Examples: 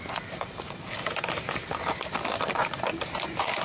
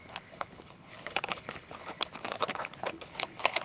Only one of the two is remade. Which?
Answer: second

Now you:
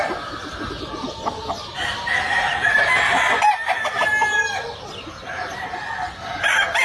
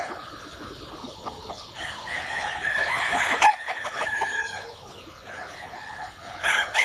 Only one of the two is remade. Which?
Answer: second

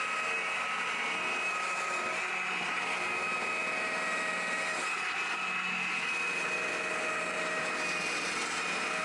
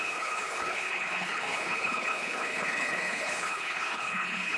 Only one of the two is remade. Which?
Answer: second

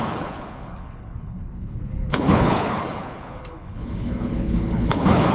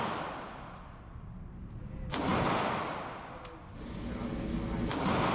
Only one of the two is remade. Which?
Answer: first